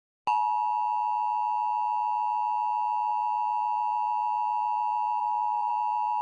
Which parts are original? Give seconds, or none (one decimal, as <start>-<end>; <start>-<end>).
0.0-5.2; 5.7-6.2